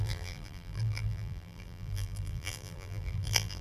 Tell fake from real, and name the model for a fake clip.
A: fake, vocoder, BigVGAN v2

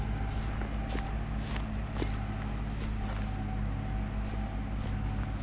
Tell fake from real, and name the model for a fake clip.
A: real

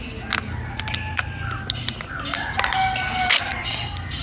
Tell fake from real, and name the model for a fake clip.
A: real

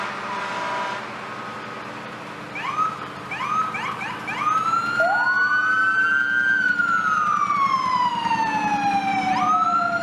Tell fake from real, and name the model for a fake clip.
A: real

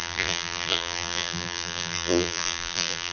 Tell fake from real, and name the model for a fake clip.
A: fake, vocoder, BigVGAN v2